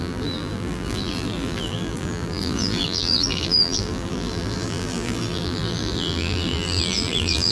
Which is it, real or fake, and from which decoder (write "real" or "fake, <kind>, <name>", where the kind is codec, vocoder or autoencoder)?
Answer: fake, vocoder, BigVGAN v2